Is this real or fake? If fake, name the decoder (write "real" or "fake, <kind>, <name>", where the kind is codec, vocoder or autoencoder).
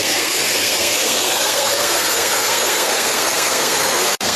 fake, codec, SNAC